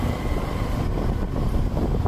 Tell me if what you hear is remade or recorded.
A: recorded